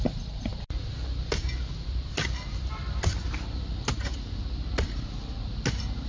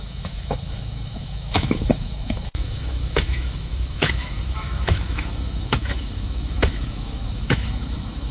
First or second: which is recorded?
first